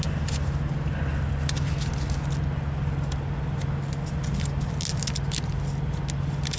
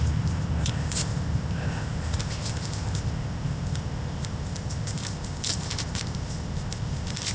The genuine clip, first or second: first